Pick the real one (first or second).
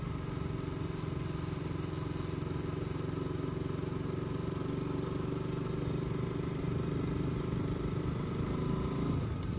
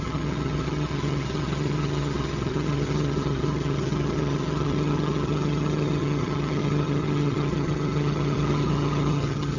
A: first